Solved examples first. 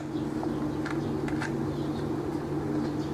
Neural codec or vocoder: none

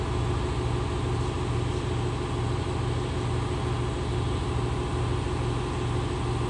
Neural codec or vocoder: none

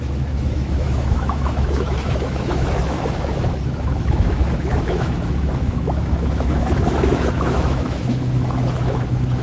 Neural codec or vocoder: autoencoder, DAC-VAE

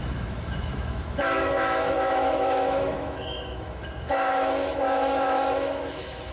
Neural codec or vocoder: autoencoder, DAC-VAE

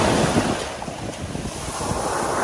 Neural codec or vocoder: none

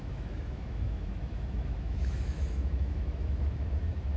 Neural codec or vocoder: autoencoder, DAC-VAE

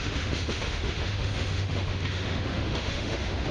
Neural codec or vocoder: autoencoder, DAC-VAE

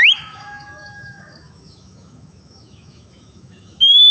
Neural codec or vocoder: autoencoder, DAC-VAE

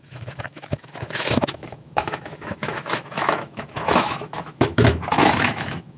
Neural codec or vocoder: autoencoder, DAC-VAE